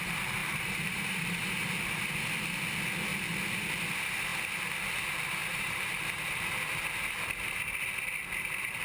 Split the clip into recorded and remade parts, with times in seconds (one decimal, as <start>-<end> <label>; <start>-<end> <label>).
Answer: 0.0-0.4 recorded; 0.4-1.4 remade; 1.4-5.4 recorded; 5.4-6.5 remade; 6.5-8.8 recorded